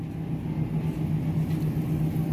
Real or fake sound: real